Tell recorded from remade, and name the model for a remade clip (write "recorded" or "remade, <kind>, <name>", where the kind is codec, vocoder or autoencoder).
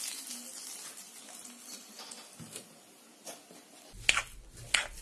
recorded